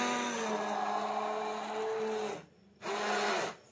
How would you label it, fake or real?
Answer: real